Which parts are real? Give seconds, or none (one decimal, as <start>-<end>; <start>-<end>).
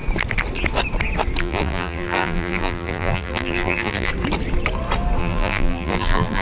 0.0-1.4; 4.1-5.2